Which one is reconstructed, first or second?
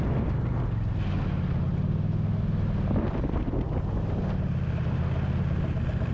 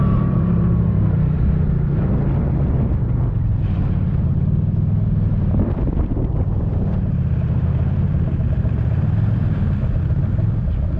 second